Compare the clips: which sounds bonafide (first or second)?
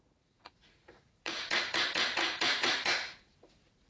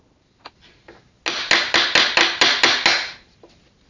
second